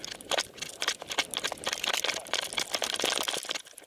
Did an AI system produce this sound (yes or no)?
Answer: no